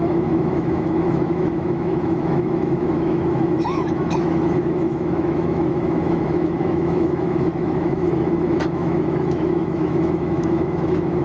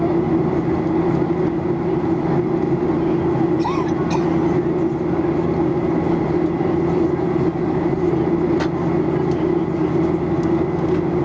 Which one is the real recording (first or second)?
second